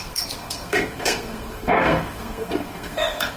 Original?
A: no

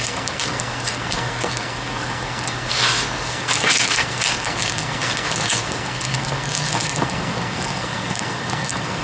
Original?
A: no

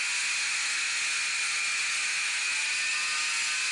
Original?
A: yes